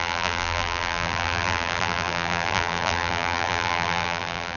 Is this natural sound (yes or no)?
no